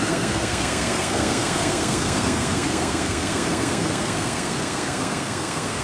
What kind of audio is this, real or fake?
fake